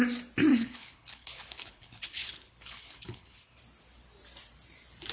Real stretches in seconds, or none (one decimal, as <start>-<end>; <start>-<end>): 0.0-0.5; 3.6-5.1